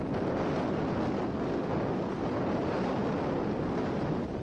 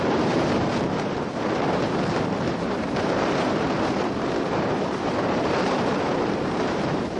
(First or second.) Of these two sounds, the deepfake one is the second